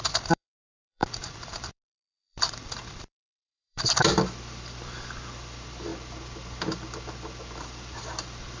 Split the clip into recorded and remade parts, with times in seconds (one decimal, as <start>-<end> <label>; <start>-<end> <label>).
0.0-5.9 remade; 5.9-7.6 recorded; 7.6-8.6 remade